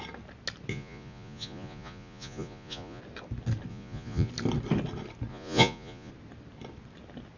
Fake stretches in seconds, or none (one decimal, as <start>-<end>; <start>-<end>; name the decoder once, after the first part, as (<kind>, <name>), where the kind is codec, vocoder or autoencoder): 0.7-3.0 (vocoder, Vocos); 3.7-4.3; 5.3-6.1